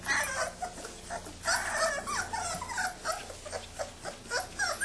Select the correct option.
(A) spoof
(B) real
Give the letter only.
B